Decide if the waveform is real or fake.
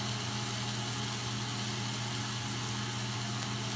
real